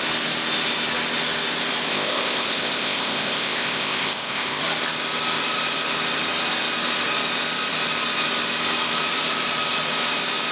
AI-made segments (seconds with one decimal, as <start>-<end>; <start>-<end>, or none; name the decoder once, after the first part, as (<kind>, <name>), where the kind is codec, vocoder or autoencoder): 1.9-4.6 (codec, ZipCodec)

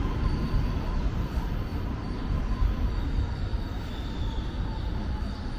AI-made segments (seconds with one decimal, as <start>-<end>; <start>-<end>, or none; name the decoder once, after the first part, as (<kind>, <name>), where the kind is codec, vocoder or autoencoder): none

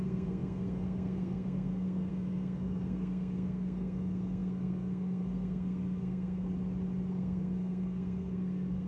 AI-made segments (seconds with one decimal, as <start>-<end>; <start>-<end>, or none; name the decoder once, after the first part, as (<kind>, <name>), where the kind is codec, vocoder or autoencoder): 0.0-6.5 (codec, SNAC); 7.1-8.9

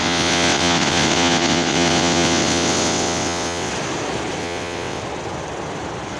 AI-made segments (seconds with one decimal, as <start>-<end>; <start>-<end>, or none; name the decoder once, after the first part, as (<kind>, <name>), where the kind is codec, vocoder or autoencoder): 0.0-3.7 (vocoder, WaveNeXt); 4.4-5.0

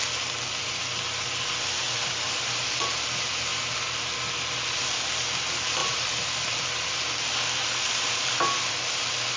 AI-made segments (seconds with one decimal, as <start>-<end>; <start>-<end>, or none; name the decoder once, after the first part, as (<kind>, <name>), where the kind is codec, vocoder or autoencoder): none